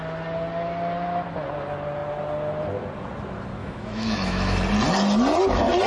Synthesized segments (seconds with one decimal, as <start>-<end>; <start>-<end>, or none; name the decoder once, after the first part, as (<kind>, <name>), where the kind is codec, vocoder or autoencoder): 3.6-4.6 (autoencoder, DAC-VAE)